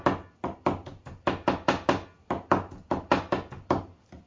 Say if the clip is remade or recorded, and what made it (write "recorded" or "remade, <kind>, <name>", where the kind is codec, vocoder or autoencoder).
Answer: recorded